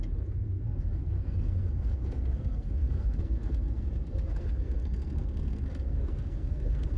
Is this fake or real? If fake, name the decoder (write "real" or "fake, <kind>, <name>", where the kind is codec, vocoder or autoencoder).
fake, codec, SNAC